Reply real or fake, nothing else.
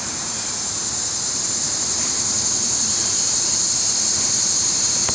fake